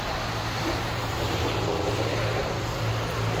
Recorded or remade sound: remade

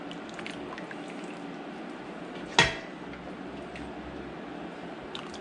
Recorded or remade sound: recorded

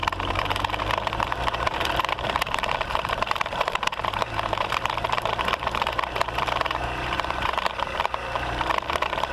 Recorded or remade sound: remade